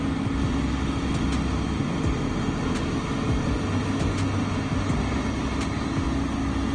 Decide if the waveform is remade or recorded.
recorded